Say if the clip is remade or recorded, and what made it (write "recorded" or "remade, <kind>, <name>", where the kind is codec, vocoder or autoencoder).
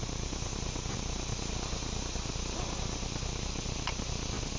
recorded